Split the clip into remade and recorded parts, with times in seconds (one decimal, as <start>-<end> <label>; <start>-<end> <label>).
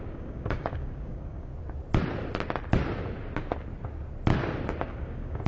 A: 0.0-1.5 remade; 1.5-4.8 recorded; 4.8-5.5 remade